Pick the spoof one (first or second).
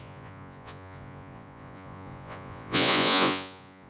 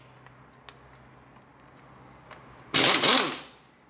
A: first